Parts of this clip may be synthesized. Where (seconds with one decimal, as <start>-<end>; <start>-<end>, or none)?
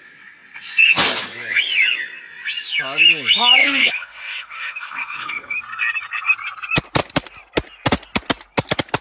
3.6-5.6